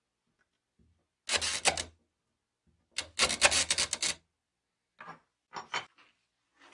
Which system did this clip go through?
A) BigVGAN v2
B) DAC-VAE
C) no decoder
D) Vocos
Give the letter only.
C